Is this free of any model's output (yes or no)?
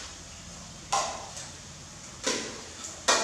yes